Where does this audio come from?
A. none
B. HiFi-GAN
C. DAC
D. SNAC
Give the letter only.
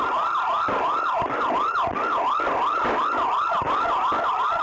A